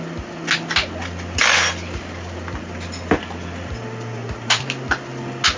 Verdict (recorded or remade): recorded